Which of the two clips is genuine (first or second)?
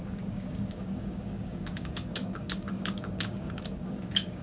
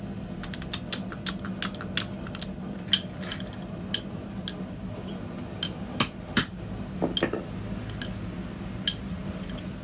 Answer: second